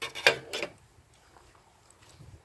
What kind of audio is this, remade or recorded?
recorded